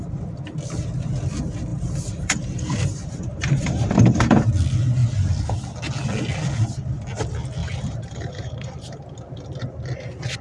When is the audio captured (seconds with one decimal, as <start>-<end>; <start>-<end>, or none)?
0.0-1.7; 4.5-7.6; 9.0-10.4